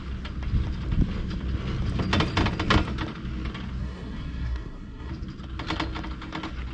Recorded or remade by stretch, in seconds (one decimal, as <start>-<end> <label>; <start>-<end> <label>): 0.0-3.8 recorded; 3.8-5.1 remade; 5.1-6.7 recorded